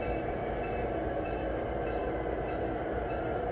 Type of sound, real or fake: fake